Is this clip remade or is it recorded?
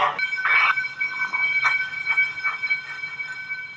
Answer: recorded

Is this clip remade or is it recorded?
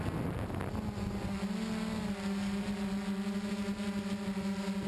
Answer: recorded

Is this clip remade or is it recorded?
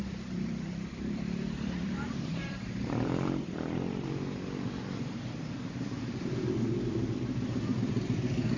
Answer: remade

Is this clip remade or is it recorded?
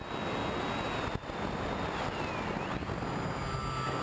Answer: recorded